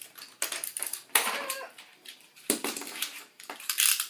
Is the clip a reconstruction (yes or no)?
yes